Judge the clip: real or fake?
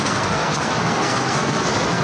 fake